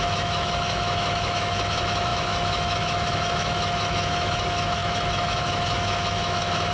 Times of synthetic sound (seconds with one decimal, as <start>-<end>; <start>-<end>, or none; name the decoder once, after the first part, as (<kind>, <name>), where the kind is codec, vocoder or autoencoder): 0.0-6.7 (autoencoder, DAC-VAE)